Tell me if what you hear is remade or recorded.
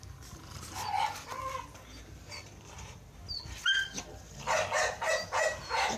recorded